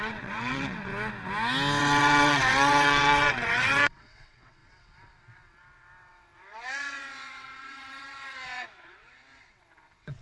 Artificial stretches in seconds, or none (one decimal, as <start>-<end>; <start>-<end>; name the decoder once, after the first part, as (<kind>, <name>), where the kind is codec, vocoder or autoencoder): 0.0-0.9 (vocoder, WaveNeXt); 1.8-10.2